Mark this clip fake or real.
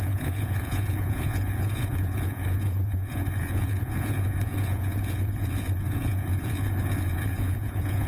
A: fake